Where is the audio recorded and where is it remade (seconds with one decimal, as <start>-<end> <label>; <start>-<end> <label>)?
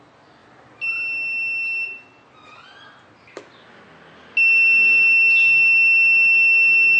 0.0-7.0 recorded